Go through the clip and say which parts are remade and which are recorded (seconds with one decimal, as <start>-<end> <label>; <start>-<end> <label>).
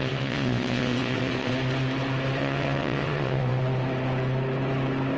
0.0-1.5 remade; 1.5-2.4 recorded; 2.4-3.6 remade; 3.6-5.2 recorded